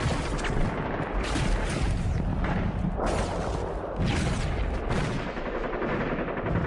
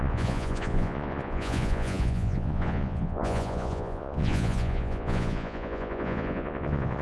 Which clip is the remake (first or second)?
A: second